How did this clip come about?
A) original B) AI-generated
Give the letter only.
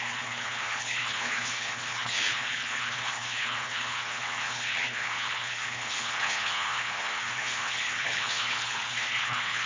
B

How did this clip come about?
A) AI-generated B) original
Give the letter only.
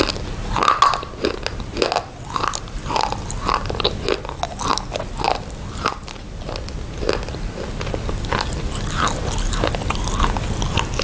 B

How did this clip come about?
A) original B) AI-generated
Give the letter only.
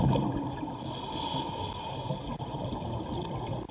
A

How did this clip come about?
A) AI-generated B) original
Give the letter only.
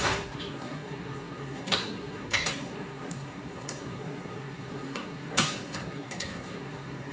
A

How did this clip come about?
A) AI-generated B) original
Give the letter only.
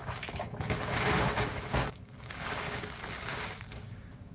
A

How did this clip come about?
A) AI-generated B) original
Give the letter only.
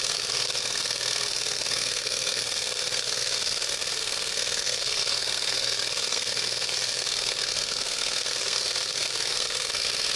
A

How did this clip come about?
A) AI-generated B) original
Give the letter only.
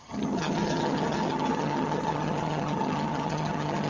A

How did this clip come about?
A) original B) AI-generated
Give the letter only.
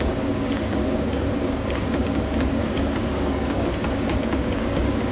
B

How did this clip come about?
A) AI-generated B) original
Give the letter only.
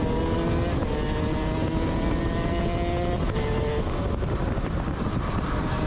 B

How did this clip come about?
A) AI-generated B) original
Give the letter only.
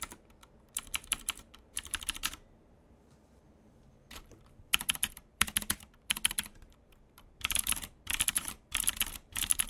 A